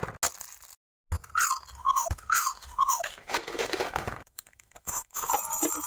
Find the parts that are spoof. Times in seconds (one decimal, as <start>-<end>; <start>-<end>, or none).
1.8-5.3